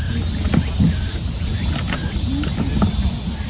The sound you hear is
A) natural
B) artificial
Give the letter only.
A